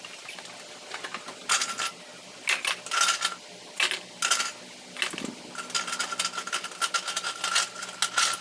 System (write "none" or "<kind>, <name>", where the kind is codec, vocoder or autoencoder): none